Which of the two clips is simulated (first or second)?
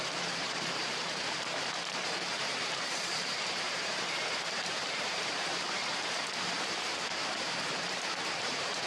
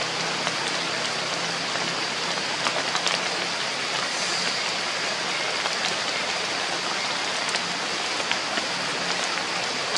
first